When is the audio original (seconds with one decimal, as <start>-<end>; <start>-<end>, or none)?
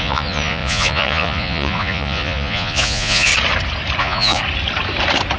3.3-4.0; 4.4-5.4